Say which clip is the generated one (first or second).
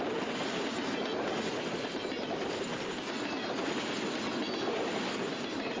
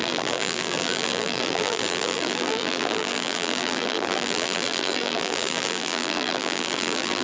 second